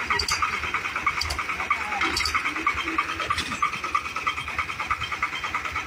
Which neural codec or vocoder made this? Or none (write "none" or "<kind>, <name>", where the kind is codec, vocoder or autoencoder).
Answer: none